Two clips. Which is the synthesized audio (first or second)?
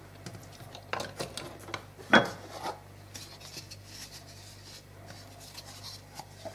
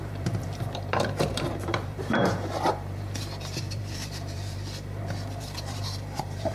second